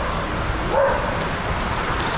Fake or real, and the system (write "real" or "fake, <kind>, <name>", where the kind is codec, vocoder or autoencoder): real